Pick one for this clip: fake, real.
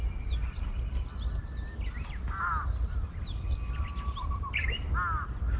real